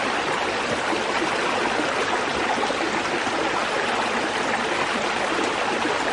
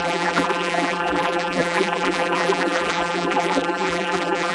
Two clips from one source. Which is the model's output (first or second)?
second